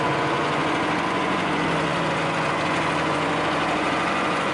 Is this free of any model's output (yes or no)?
no